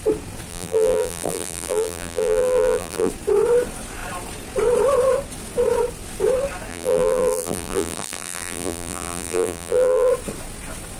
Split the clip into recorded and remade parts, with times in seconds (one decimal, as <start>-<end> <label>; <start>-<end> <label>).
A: 0.0-0.5 recorded; 0.5-3.1 remade; 3.1-6.7 recorded; 6.7-10.1 remade; 10.1-11.0 recorded